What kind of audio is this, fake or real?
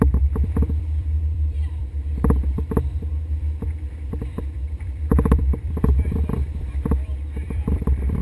fake